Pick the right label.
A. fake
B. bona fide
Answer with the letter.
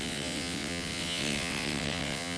A